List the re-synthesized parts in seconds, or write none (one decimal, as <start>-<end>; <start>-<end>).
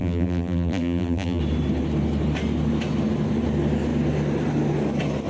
0.0-1.4